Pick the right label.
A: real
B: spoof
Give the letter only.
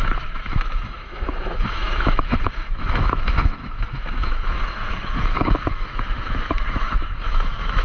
B